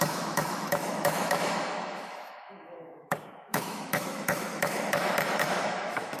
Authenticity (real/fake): fake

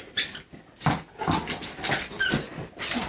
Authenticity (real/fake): real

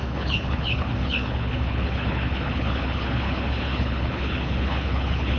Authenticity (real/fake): fake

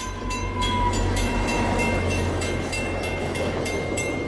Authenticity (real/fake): fake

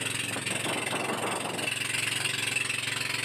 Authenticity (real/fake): real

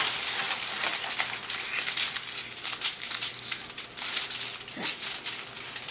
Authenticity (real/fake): real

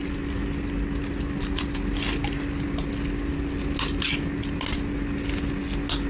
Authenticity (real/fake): real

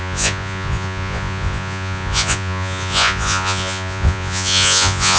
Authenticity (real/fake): fake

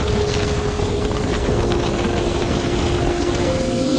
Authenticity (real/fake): fake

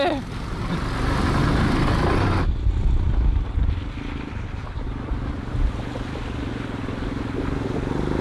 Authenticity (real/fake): real